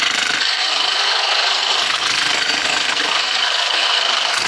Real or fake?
fake